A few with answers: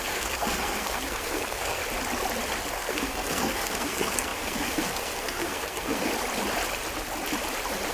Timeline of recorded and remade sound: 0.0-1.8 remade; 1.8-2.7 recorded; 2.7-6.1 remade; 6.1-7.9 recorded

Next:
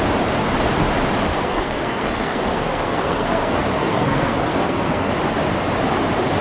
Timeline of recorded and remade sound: 0.0-1.3 recorded; 1.3-5.1 remade; 5.1-6.4 recorded

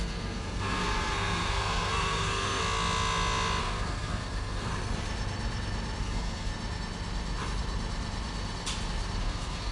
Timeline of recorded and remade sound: 0.0-2.6 remade; 2.6-3.6 recorded; 3.6-4.7 remade; 4.7-6.0 recorded; 6.0-6.5 remade; 6.5-9.2 recorded; 9.2-9.7 remade

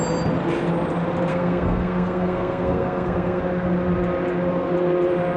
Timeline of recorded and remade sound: 0.0-1.3 recorded; 1.3-3.4 remade; 3.4-5.4 recorded

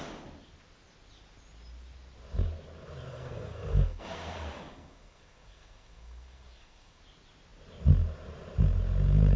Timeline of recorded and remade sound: 0.0-3.1 recorded; 3.1-7.0 remade; 7.0-9.4 recorded

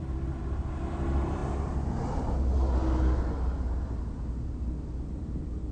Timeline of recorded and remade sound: 0.0-5.7 recorded